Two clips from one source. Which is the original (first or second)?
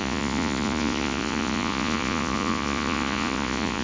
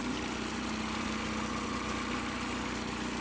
second